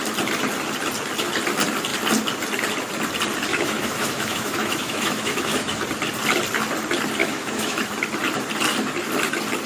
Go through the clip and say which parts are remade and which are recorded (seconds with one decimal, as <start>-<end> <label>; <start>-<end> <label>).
0.0-3.5 recorded; 3.5-5.8 remade; 5.8-7.2 recorded; 7.2-7.8 remade; 7.8-9.7 recorded

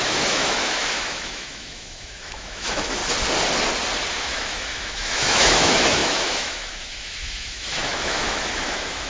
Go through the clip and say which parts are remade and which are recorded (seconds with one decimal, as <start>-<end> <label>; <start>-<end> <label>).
0.0-3.0 remade; 3.0-4.1 recorded; 4.1-9.1 remade

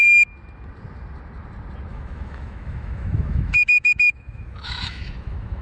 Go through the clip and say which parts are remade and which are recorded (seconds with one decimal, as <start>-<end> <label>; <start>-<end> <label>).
0.0-1.9 recorded; 1.9-5.6 remade

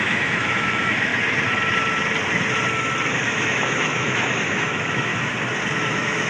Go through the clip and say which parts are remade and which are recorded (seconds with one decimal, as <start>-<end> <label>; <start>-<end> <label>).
0.0-1.1 remade; 1.1-3.1 recorded; 3.1-5.1 remade; 5.1-5.8 recorded; 5.8-6.3 remade

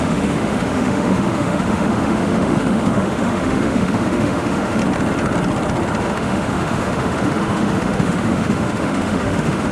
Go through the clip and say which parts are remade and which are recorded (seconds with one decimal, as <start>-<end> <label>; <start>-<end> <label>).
0.0-4.8 remade; 4.8-6.0 recorded; 6.0-9.7 remade

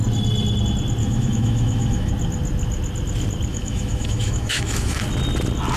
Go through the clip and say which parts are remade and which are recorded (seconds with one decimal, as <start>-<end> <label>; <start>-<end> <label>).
0.0-1.0 recorded; 1.0-2.1 remade; 2.1-3.5 recorded; 3.5-5.0 remade; 5.0-5.8 recorded

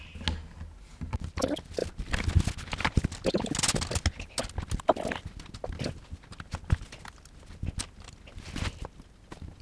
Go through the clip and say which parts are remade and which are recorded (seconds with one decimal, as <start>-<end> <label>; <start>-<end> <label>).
0.0-9.6 recorded

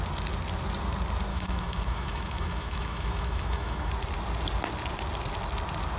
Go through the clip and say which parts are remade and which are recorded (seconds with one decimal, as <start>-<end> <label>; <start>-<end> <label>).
0.0-1.3 recorded; 1.3-3.9 remade; 3.9-6.0 recorded